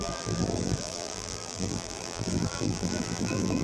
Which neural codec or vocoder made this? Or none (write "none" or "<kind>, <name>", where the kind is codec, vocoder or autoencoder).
vocoder, BigVGAN v2